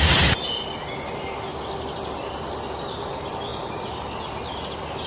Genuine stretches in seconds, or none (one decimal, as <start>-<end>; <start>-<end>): 0.0-5.1